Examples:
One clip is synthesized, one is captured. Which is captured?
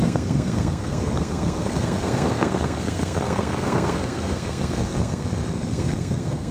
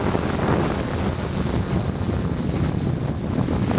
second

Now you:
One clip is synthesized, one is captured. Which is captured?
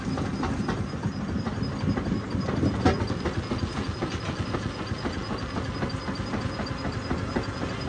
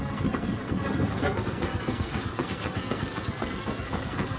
first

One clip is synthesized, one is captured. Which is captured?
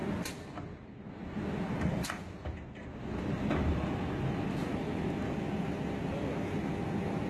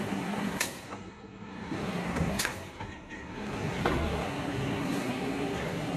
first